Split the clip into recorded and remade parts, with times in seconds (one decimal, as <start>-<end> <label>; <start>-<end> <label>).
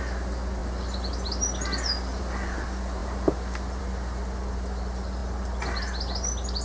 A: 0.0-6.6 recorded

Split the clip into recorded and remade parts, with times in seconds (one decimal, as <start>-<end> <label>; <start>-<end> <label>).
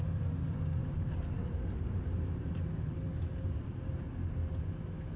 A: 0.0-0.8 recorded; 0.8-3.9 remade; 3.9-5.2 recorded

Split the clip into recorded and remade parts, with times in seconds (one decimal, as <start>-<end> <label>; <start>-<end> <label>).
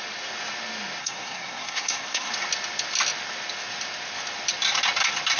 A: 0.0-1.0 recorded; 1.0-2.3 remade; 2.3-5.4 recorded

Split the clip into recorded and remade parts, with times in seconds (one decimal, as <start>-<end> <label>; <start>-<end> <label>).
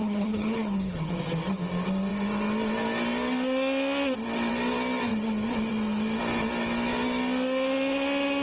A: 0.0-1.1 remade; 1.1-8.4 recorded